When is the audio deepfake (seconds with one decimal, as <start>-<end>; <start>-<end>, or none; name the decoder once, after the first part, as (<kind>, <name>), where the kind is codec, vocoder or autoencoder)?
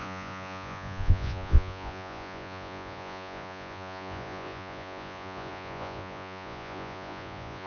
0.0-7.7 (vocoder, Vocos)